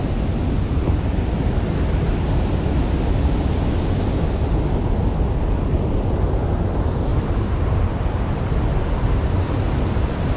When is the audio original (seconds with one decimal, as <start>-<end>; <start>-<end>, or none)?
0.0-10.4